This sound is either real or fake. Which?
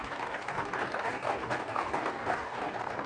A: fake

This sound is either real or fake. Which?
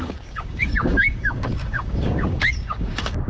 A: fake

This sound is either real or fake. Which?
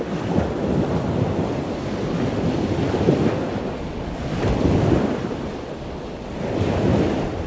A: real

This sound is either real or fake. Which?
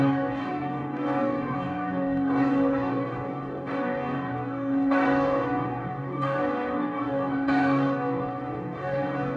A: fake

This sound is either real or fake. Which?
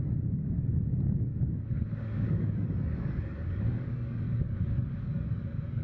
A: fake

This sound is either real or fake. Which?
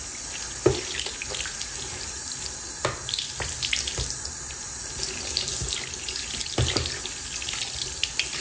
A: real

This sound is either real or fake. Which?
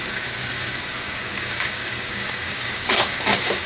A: fake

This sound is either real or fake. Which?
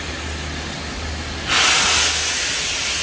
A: real